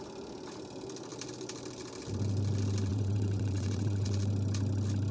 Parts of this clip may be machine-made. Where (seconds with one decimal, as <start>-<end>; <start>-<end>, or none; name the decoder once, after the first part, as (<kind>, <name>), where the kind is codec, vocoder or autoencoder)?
2.9-4.3 (vocoder, WaveNeXt)